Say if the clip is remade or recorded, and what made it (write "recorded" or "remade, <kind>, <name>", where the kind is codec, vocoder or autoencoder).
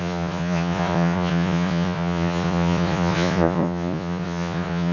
remade, vocoder, Vocos